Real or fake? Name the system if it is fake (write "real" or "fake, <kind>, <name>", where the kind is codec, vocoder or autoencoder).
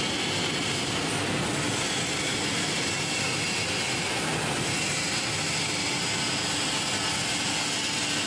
real